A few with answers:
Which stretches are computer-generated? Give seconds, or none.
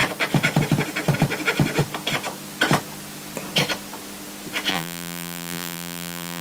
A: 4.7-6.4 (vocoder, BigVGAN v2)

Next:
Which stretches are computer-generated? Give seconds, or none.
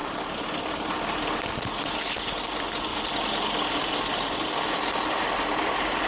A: none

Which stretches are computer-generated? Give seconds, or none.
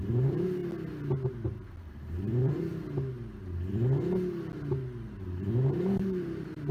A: 0.0-0.6 (vocoder, BigVGAN v2); 1.8-2.7; 5.1-6.7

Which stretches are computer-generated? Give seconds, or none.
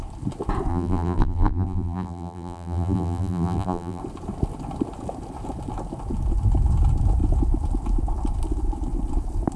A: 0.7-4.0 (vocoder, BigVGAN v2)